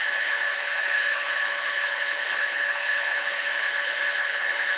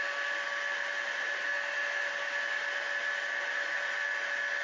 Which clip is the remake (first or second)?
first